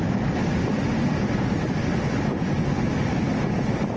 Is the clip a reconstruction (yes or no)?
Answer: no